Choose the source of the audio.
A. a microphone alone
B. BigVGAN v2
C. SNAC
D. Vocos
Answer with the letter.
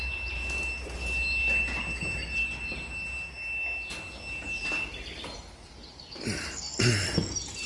A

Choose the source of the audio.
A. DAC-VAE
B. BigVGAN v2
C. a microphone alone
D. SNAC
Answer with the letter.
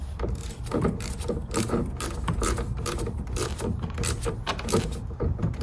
B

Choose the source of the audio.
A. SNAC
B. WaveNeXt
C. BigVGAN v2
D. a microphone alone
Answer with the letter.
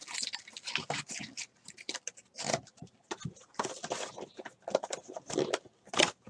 D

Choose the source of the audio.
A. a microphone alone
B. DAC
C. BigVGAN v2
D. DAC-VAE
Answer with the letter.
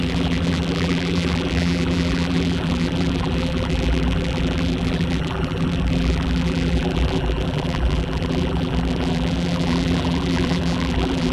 C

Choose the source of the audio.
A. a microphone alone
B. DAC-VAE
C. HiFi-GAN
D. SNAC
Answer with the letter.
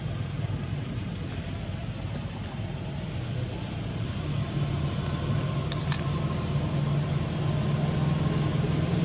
A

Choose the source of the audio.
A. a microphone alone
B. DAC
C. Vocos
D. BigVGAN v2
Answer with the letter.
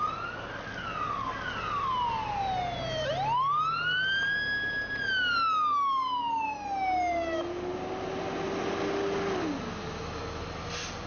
A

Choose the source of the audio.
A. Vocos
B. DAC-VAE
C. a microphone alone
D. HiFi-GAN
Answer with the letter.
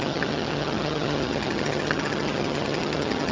D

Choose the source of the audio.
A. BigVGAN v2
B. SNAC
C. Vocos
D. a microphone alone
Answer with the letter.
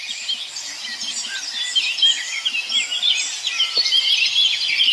D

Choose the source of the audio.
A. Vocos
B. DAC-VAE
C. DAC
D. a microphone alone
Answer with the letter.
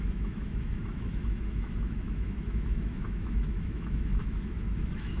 B